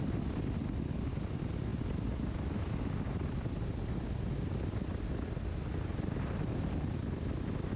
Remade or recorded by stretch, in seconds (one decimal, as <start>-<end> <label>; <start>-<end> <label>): 0.0-5.9 recorded; 5.9-7.0 remade; 7.0-7.8 recorded